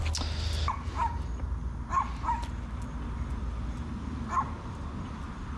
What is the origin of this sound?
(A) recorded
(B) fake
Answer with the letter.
A